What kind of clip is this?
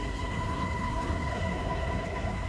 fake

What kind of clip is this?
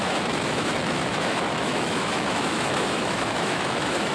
fake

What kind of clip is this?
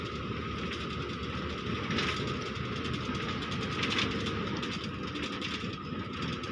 real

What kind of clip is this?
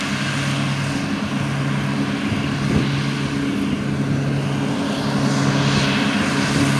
real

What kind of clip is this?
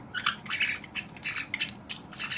real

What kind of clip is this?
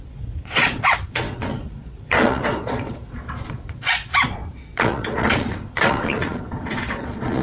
fake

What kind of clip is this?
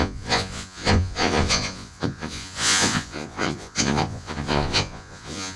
fake